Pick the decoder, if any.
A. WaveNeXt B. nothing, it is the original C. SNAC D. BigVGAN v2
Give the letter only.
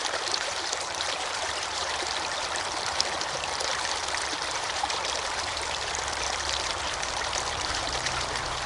D